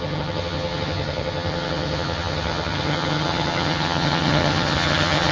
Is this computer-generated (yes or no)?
yes